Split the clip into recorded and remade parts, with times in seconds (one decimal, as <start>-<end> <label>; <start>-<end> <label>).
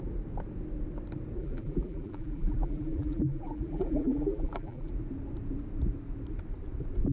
0.0-1.4 recorded; 1.4-4.9 remade; 4.9-7.1 recorded